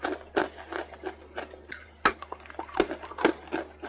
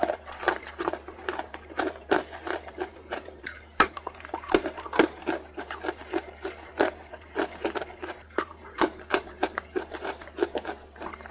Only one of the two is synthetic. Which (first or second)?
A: second